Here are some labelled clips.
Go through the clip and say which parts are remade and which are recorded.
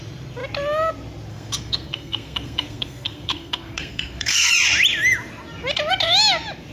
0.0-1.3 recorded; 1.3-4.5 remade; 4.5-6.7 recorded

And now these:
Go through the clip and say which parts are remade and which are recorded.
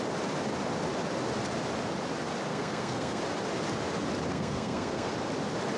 0.0-2.5 recorded; 2.5-3.2 remade; 3.2-4.3 recorded; 4.3-5.1 remade; 5.1-5.8 recorded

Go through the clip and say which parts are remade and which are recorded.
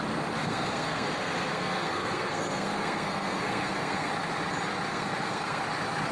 0.0-0.4 recorded; 0.4-4.1 remade; 4.1-4.9 recorded; 4.9-5.6 remade; 5.6-6.1 recorded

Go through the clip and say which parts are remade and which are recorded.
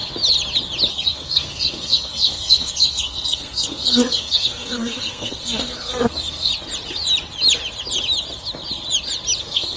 0.0-0.9 recorded; 0.9-6.5 remade; 6.5-9.4 recorded; 9.4-9.8 remade